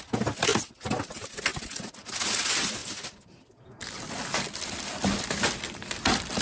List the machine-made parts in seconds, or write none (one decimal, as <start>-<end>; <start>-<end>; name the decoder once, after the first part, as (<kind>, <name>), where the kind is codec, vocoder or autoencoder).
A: 0.5-1.1 (vocoder, BigVGAN v2); 1.5-2.1; 2.8-6.4